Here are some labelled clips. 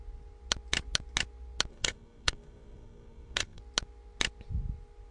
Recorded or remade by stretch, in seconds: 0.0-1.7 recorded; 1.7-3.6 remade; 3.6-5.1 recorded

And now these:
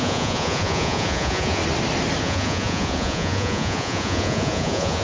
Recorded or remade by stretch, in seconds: 0.0-1.6 remade; 1.6-2.2 recorded; 2.2-5.0 remade

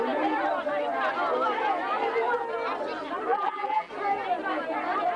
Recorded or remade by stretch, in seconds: 0.0-3.3 recorded; 3.3-3.9 remade; 3.9-5.2 recorded